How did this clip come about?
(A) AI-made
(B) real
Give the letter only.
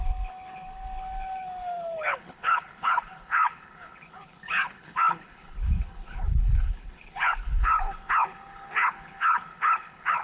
A